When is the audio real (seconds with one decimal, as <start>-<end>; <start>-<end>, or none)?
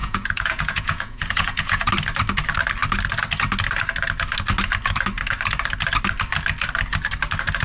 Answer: 1.9-7.6